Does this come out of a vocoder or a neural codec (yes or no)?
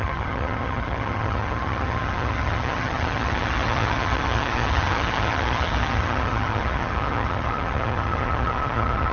yes